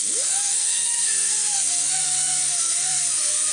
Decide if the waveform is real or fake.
fake